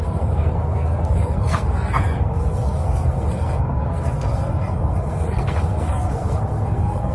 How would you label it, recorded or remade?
remade